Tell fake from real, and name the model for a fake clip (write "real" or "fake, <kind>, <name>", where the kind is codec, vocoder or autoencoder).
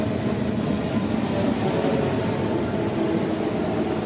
real